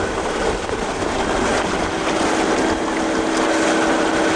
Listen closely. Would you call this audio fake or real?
real